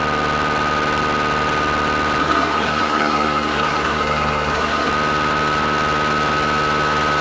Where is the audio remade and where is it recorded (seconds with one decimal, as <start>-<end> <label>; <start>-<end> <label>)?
0.0-2.2 recorded; 2.2-4.9 remade; 4.9-7.2 recorded